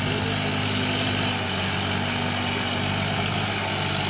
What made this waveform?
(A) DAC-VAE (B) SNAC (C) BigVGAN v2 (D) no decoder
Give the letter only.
D